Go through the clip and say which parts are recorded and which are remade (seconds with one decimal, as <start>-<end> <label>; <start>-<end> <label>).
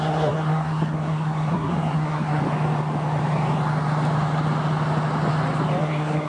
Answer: 0.0-2.4 remade; 2.4-5.8 recorded; 5.8-6.3 remade